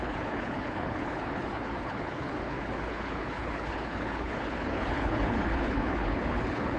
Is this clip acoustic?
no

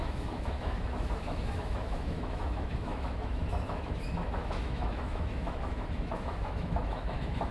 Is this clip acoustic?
no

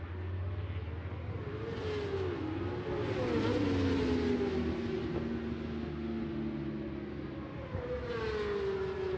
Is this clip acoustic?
yes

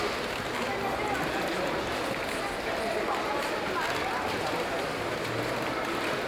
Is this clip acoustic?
yes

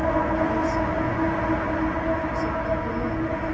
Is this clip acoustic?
yes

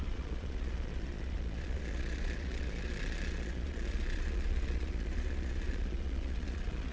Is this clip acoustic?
no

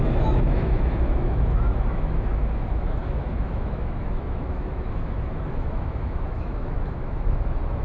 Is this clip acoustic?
no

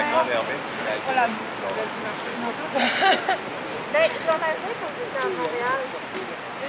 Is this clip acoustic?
yes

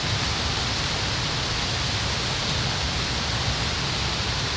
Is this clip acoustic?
yes